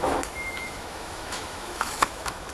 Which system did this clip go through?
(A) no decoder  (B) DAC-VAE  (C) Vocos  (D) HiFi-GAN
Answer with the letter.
B